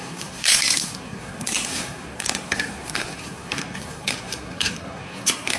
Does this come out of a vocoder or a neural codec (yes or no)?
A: yes